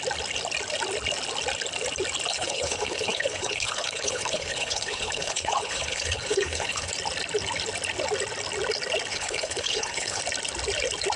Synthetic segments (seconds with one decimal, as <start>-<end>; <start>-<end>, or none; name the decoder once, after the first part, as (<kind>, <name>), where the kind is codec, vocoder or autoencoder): 2.3-6.9 (codec, HILCodec); 9.1-10.2